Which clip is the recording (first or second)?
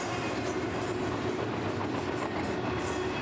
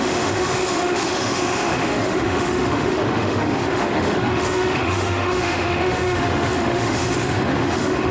first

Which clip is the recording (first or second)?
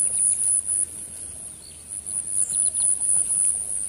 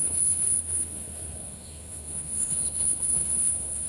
first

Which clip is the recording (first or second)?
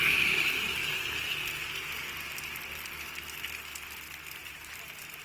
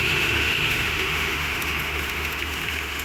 first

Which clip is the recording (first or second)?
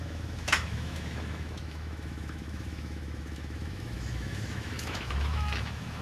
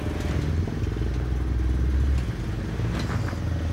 second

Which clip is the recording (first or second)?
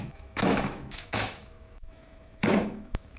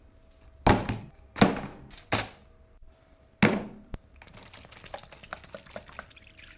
second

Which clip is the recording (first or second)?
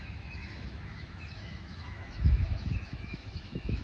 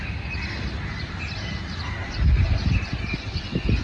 second